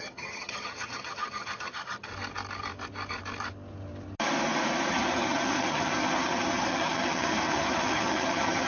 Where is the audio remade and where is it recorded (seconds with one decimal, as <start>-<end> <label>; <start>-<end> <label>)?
0.0-2.1 remade; 2.1-4.9 recorded; 4.9-8.7 remade